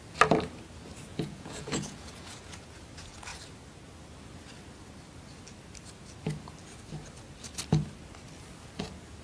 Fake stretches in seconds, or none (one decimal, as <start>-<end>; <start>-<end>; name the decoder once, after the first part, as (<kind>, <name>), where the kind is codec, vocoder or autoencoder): 1.1-2.6 (vocoder, Vocos)